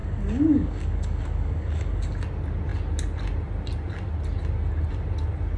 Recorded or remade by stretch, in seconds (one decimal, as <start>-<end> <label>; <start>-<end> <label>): 0.0-2.2 remade; 2.2-5.6 recorded